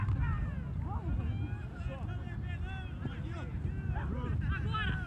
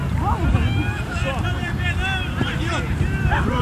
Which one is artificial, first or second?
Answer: second